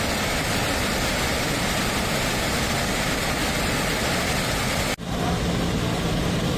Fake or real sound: real